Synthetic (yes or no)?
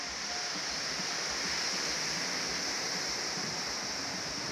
no